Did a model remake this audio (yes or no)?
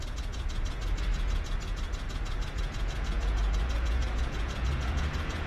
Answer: yes